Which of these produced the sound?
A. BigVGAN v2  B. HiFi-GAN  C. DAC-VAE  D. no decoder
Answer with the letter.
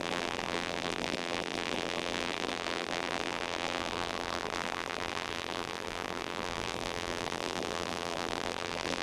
A